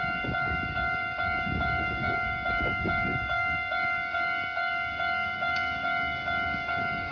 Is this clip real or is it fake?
fake